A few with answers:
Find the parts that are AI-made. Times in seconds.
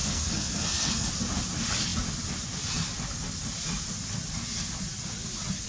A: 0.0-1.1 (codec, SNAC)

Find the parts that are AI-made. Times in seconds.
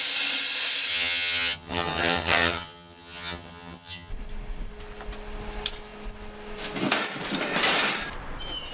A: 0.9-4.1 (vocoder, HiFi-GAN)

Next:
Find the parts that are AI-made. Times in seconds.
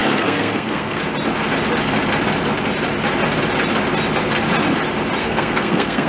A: 0.0-1.0 (codec, SNAC); 5.2-6.1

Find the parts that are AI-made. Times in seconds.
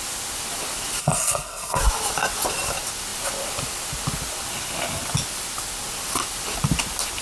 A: 1.0-1.8 (codec, SNAC)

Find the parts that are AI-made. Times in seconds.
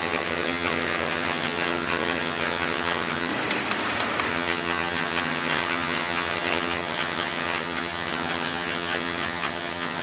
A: 0.0-3.3 (vocoder, HiFi-GAN); 4.3-10.0